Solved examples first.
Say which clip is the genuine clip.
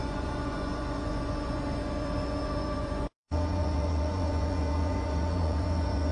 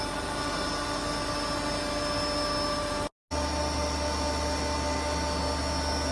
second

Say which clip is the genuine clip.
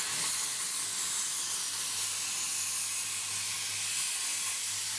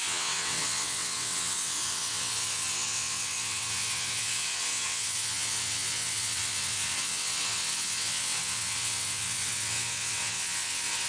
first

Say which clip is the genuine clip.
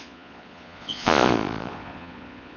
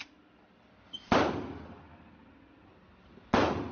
second